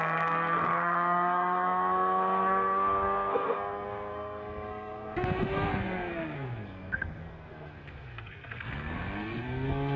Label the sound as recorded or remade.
remade